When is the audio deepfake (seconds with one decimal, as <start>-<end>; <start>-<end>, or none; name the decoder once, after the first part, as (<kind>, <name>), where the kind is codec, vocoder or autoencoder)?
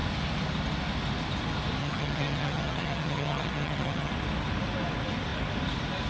1.8-4.1 (vocoder, HiFi-GAN)